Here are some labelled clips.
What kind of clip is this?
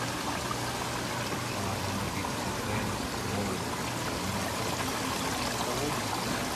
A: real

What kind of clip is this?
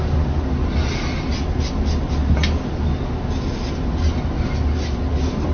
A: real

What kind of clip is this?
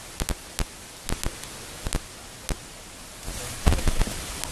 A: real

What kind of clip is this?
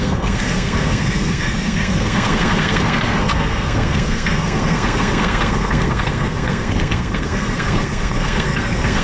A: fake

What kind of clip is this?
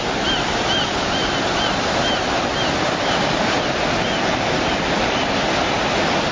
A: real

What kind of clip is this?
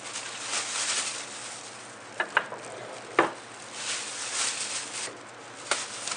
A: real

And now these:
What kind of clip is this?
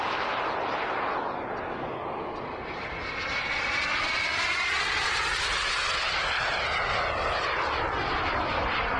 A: real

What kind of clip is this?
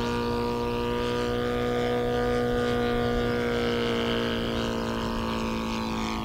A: real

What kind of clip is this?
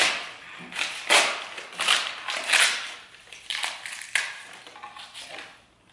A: real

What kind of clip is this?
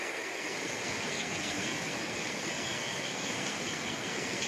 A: fake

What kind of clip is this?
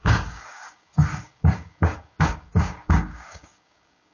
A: fake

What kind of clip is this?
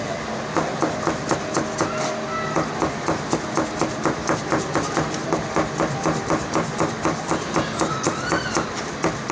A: real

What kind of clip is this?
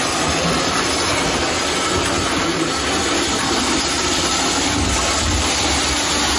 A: real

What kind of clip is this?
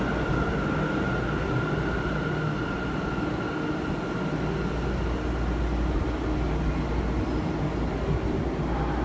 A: real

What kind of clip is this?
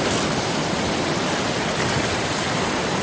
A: real